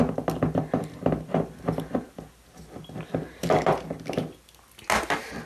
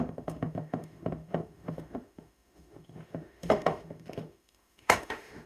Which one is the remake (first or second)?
second